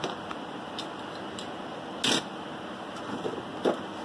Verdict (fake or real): real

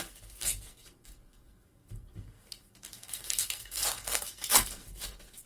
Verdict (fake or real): fake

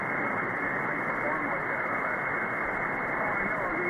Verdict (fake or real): real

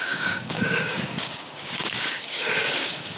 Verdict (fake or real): fake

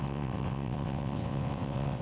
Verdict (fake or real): fake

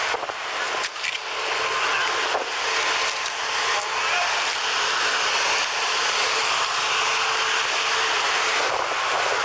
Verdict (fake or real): real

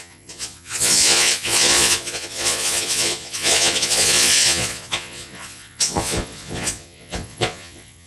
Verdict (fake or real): fake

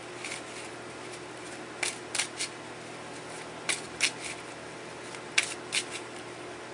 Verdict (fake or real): real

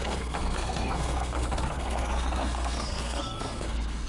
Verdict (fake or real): fake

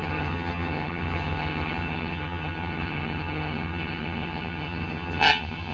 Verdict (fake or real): fake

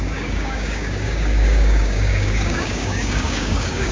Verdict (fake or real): fake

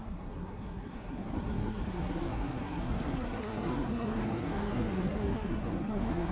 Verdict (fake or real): fake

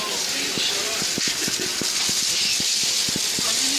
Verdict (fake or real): real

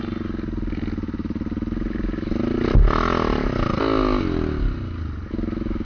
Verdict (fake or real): real